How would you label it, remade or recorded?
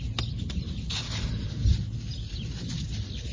recorded